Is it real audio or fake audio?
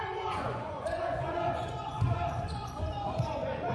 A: fake